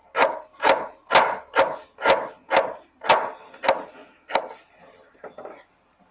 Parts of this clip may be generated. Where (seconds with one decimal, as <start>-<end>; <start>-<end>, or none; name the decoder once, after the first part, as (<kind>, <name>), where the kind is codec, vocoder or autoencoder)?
4.0-5.1 (vocoder, BigVGAN v2)